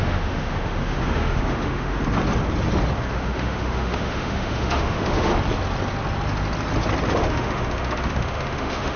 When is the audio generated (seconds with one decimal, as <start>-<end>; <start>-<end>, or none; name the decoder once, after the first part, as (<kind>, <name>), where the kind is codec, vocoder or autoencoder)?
0.0-2.0 (autoencoder, DAC-VAE); 3.1-5.3; 7.1-9.0